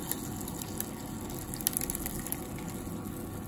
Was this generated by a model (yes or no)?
no